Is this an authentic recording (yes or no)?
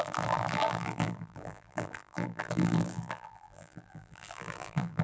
no